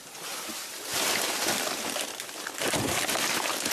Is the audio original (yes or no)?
no